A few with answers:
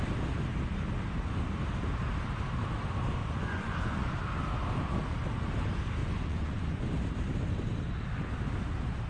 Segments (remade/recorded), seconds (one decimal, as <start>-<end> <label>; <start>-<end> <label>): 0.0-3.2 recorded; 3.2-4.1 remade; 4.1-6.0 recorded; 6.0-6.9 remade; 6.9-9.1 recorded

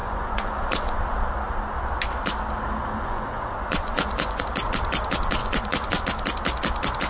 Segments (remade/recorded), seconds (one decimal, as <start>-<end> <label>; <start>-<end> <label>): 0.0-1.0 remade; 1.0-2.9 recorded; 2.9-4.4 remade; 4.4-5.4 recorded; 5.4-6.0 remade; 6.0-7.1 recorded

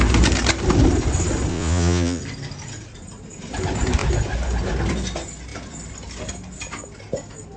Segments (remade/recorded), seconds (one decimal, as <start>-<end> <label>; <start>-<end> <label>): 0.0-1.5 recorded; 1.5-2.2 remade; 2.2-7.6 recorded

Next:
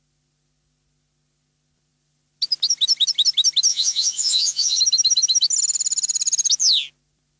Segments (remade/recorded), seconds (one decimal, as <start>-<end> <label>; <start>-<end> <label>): 0.0-3.7 recorded; 3.7-4.8 remade; 4.8-7.4 recorded

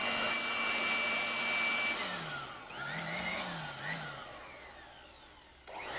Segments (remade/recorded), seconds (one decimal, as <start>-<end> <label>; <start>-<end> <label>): 0.0-6.0 recorded

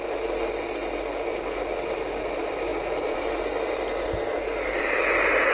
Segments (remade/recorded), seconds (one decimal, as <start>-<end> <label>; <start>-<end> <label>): 0.0-5.5 recorded

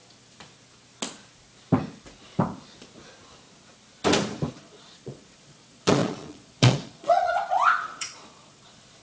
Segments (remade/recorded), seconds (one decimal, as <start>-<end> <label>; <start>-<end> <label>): 0.0-4.5 recorded; 4.5-9.0 remade